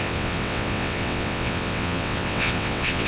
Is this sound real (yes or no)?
no